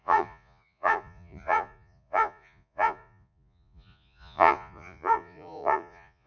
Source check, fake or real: fake